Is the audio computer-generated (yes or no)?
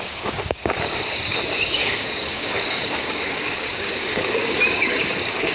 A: yes